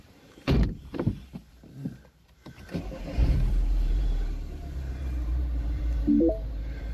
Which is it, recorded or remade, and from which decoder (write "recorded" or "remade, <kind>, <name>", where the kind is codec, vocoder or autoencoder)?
remade, vocoder, BigVGAN v2